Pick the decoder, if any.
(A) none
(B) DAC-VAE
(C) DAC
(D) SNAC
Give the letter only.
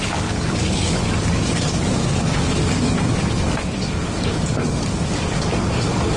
C